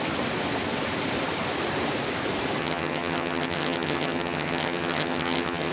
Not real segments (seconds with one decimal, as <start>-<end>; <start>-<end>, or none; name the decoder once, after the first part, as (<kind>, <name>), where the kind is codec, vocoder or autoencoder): 2.6-5.7 (vocoder, HiFi-GAN)